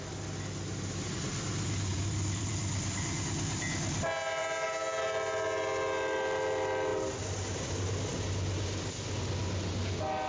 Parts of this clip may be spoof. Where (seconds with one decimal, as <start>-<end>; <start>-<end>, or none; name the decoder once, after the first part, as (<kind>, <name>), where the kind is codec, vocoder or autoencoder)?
1.9-3.6 (vocoder, BigVGAN v2)